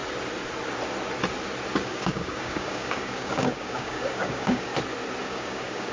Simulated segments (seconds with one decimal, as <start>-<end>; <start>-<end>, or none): 1.8-4.7; 5.2-5.9